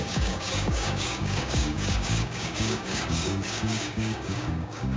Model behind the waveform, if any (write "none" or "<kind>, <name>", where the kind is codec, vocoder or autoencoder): codec, DAC